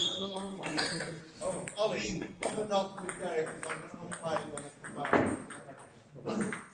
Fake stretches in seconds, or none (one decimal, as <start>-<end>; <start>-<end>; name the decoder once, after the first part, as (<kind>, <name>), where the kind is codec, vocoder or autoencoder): 0.0-1.2 (codec, SNAC); 2.0-2.5